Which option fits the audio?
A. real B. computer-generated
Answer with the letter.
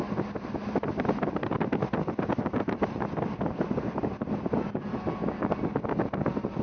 A